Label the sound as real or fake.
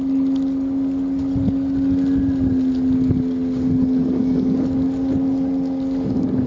real